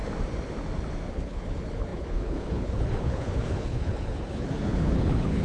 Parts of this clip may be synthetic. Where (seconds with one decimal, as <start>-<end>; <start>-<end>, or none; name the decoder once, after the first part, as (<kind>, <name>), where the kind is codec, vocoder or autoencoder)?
1.1-5.4 (codec, HILCodec)